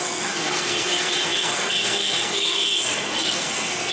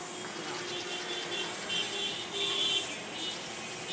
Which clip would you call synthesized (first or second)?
first